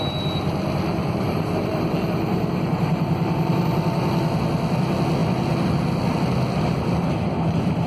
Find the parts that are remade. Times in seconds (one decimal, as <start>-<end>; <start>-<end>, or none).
0.9-3.5